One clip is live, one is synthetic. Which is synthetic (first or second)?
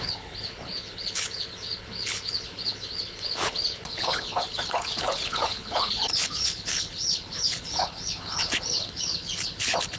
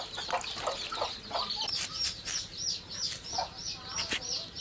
first